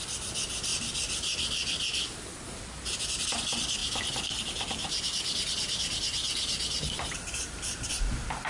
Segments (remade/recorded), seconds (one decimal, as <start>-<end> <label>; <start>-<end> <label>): 0.0-8.5 recorded